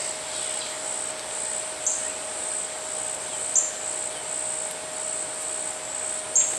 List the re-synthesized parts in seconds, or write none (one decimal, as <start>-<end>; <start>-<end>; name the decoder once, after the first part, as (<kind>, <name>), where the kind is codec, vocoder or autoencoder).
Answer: none